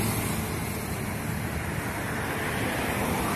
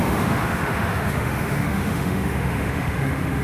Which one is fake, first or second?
second